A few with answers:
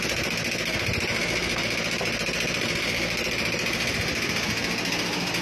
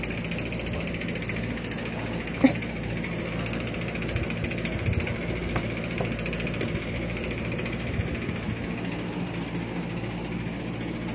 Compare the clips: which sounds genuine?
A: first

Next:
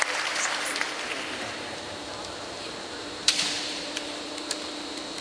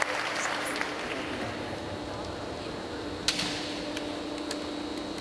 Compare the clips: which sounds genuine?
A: second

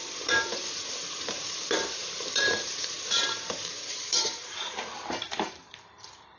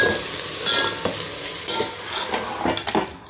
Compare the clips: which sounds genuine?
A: second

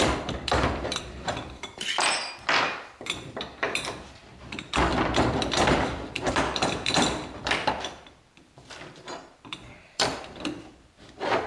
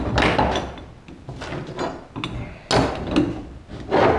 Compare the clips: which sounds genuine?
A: second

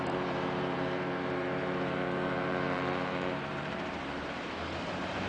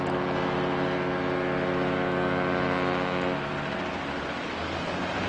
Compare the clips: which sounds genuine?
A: second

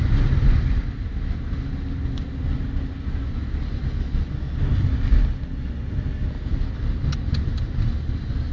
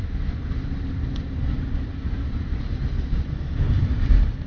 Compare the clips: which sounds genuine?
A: first